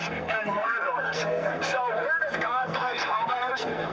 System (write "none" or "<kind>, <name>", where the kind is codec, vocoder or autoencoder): codec, SNAC